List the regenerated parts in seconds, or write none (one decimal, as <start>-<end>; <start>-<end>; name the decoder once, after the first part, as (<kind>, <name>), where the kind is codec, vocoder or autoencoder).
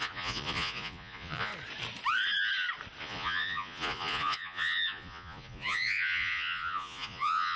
0.0-1.5 (vocoder, Vocos); 3.0-7.6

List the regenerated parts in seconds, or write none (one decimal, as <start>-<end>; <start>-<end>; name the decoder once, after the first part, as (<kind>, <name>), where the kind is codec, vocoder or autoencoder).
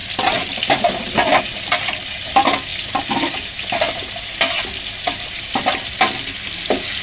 none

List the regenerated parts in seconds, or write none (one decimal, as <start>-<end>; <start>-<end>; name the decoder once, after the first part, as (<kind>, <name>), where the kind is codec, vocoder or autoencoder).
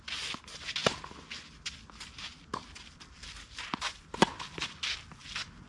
none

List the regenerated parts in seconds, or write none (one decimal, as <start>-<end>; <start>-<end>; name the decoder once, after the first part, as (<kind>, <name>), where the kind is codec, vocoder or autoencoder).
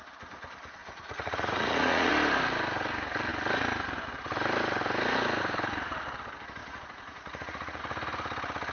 0.8-2.1 (vocoder, Vocos); 6.6-7.8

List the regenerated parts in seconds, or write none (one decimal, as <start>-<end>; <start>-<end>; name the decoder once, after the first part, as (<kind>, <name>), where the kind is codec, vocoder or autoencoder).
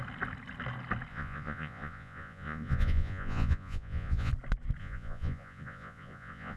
1.1-4.3 (vocoder, Vocos); 4.8-6.6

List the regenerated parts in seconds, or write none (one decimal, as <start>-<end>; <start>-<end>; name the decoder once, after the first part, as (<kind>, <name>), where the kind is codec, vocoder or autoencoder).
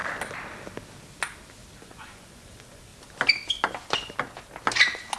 1.8-2.9 (vocoder, Vocos)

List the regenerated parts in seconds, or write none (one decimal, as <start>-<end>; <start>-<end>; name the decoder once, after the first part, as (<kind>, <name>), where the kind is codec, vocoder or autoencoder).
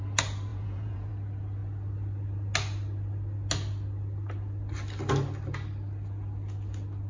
0.5-1.1 (vocoder, Vocos)